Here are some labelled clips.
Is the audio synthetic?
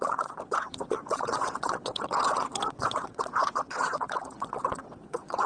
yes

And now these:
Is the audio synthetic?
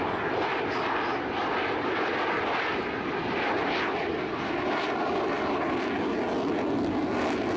no